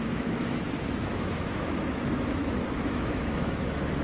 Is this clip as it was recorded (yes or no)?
no